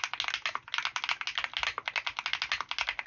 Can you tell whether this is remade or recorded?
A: recorded